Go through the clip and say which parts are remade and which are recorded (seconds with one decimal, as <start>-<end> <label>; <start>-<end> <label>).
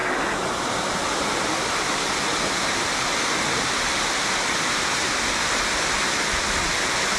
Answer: 0.0-7.2 recorded